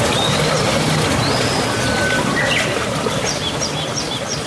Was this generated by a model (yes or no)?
no